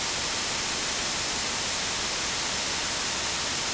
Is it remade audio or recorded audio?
recorded